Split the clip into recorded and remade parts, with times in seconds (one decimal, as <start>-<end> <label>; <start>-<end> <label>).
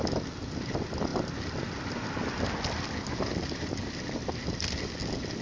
0.0-5.4 recorded